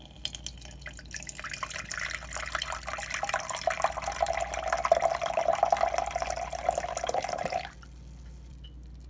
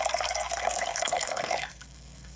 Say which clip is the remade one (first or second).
second